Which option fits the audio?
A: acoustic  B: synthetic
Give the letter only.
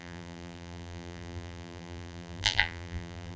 B